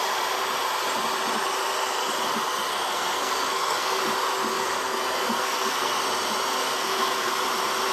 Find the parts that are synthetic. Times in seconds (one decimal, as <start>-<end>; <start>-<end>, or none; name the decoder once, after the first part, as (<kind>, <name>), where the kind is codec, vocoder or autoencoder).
2.7-4.0 (codec, SNAC); 4.5-6.0; 6.6-7.4